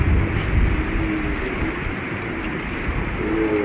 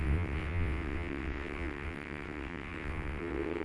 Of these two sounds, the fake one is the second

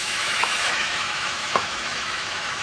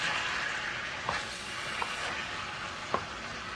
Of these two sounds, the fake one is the first